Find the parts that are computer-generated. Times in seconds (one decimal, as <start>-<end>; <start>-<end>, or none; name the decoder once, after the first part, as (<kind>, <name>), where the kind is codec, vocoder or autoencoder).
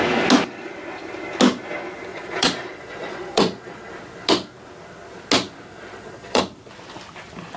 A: 2.1-3.9 (vocoder, Vocos); 5.7-6.4